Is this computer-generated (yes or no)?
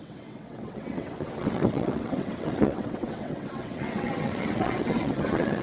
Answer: yes